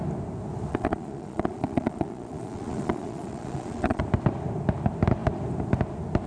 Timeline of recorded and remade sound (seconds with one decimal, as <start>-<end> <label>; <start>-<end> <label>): 0.0-0.7 recorded; 0.7-4.0 remade; 4.0-6.3 recorded